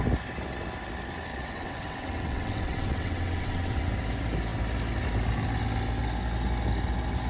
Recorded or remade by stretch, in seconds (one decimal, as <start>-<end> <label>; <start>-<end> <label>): 0.0-1.3 recorded; 1.3-3.9 remade; 3.9-7.3 recorded